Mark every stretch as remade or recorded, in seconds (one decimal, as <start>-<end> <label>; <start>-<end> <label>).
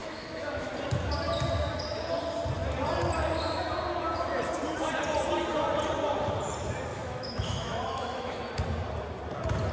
0.0-0.7 remade; 0.7-6.9 recorded; 6.9-8.5 remade; 8.5-9.7 recorded